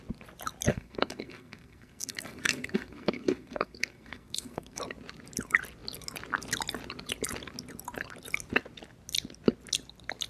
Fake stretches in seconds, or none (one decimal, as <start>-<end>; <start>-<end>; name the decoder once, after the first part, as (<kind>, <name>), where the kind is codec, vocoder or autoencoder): 0.7-4.8 (codec, SNAC)